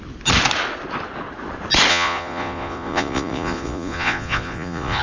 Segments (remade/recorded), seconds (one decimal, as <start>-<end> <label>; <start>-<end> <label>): 0.0-1.9 recorded; 1.9-5.0 remade